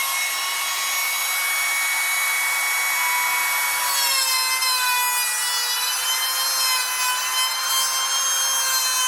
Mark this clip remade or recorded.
recorded